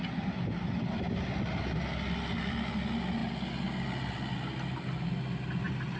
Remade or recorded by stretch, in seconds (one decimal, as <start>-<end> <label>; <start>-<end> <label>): 0.0-6.0 recorded